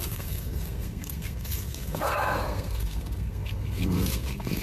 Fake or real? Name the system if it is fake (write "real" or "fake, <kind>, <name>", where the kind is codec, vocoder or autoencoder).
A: fake, codec, SNAC